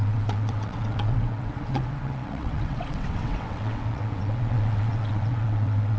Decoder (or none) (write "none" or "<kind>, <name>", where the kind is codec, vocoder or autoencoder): vocoder, WaveNeXt